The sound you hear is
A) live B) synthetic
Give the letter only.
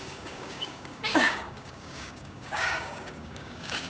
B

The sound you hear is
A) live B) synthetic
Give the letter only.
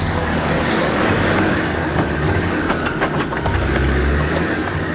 B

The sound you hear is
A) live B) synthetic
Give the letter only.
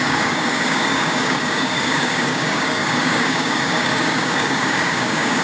B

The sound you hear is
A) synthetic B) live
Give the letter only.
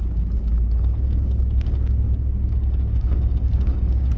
A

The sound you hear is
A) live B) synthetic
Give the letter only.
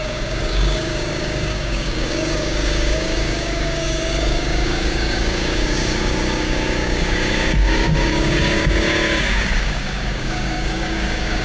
B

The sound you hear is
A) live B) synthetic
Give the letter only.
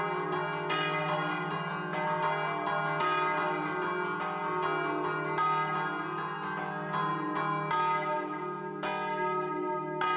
A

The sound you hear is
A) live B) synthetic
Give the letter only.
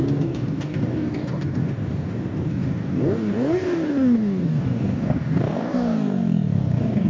B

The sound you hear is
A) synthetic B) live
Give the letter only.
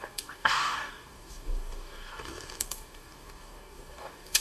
A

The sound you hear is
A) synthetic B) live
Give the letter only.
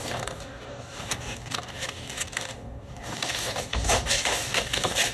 A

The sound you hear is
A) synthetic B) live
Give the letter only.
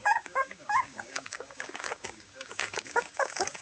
A